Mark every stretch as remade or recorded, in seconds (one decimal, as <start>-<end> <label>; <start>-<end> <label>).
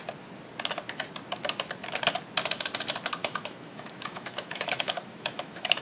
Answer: 0.0-3.2 recorded; 3.2-5.8 remade